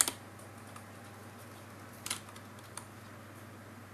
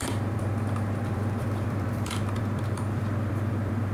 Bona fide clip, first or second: first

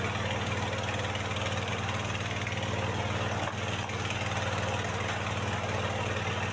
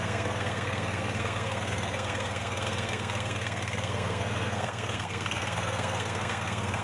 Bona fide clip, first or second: first